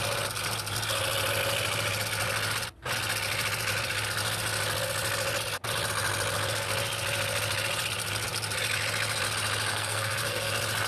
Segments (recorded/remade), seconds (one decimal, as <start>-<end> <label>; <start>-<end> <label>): 0.0-9.7 recorded; 9.7-10.5 remade; 10.5-10.9 recorded